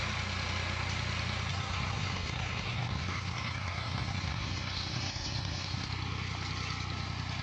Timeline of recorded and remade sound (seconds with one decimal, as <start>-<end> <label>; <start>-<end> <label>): 0.0-1.5 recorded; 1.5-5.9 remade; 5.9-7.4 recorded